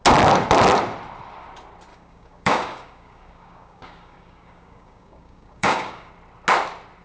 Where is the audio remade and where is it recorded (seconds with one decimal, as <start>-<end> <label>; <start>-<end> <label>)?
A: 0.0-1.9 recorded; 1.9-6.1 remade; 6.1-7.0 recorded